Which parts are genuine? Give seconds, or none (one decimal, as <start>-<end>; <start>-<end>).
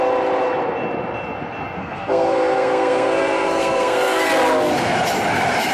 0.0-1.8; 4.3-5.7